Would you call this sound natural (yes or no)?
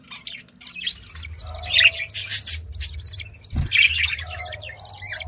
yes